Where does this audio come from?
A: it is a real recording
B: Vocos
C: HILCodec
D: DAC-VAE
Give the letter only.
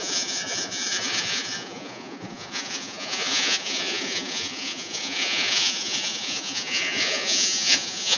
B